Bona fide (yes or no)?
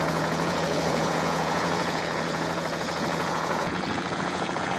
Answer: no